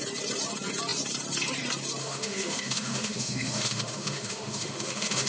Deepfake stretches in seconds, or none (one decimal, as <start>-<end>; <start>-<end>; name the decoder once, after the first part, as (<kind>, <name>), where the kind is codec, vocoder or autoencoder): 2.0-5.3 (autoencoder, DAC-VAE)